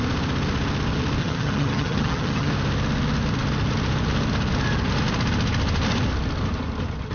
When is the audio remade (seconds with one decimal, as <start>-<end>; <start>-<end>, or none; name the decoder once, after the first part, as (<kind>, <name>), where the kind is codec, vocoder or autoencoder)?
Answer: 1.2-2.5 (vocoder, HiFi-GAN)